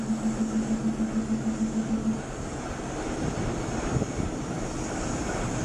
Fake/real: real